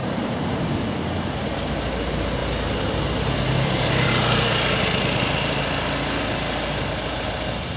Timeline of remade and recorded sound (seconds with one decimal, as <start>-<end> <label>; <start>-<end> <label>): 0.0-0.9 remade; 0.9-2.4 recorded; 2.4-4.1 remade; 4.1-7.8 recorded